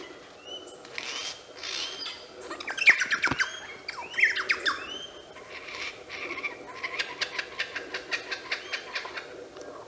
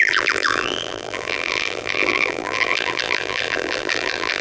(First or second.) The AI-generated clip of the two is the second